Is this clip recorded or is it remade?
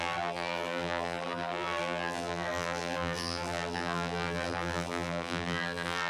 remade